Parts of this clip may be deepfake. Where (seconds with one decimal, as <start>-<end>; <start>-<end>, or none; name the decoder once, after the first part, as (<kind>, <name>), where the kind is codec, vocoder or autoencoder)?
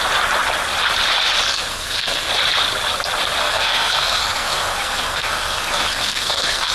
1.5-2.3 (codec, SNAC); 3.4-6.7